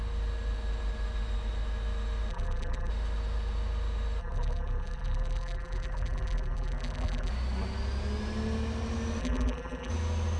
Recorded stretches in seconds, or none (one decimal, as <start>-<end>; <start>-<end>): 0.0-2.3; 2.9-4.2; 7.3-9.2; 9.9-10.4